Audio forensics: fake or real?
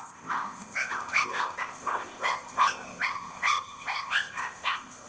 fake